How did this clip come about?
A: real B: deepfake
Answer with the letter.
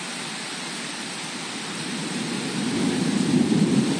B